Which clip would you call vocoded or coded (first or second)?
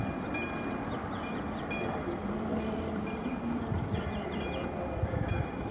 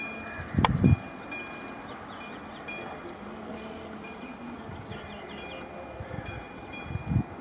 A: first